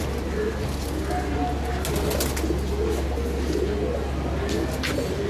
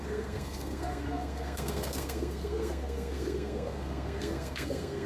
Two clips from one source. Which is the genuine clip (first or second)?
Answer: first